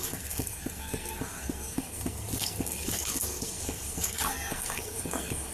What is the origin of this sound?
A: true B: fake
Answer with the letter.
B